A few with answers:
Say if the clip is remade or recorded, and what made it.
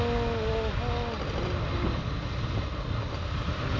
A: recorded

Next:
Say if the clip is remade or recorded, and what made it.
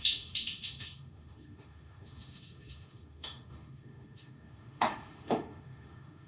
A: remade, autoencoder, DAC-VAE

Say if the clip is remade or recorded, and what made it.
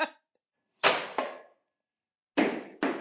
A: recorded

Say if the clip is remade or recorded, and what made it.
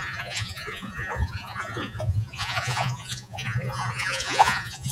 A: remade, vocoder, Vocos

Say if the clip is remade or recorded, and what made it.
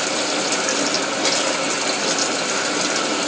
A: recorded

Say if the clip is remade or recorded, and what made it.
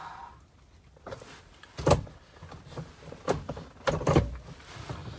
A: recorded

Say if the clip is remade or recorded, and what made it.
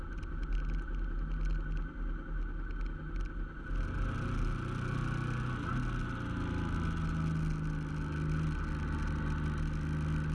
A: recorded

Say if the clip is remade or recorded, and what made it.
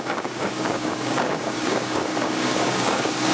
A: remade, codec, DAC